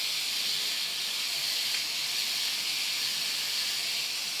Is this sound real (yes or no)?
yes